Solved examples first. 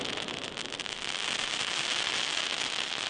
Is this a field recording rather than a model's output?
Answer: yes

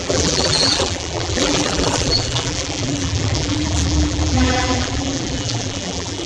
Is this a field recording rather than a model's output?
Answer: no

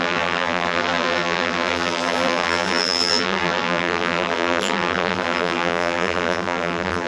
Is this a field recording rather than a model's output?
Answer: no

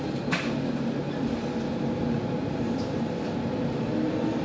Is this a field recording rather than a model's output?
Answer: yes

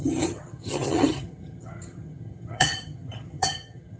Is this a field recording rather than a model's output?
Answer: no